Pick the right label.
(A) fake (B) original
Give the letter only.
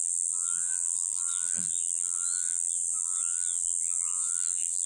A